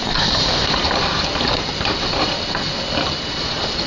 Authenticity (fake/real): fake